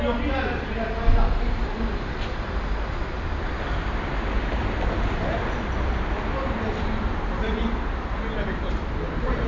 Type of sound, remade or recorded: recorded